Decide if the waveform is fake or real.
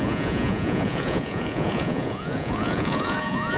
fake